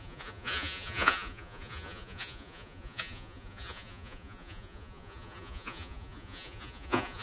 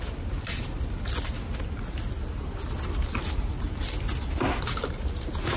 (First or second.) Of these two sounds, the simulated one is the first